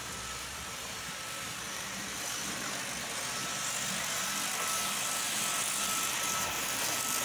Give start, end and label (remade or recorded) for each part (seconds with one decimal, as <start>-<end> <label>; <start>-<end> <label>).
0.0-7.2 remade